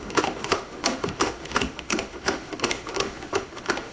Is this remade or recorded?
remade